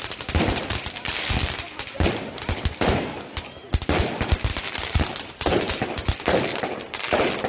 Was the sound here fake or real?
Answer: real